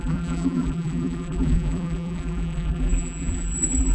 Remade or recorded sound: remade